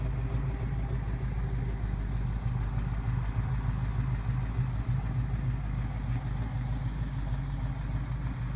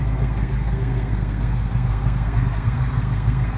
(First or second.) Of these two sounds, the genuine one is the first